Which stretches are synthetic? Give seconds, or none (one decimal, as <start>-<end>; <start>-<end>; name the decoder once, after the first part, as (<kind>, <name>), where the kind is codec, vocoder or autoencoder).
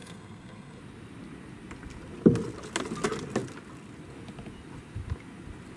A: 0.0-0.8 (codec, SNAC)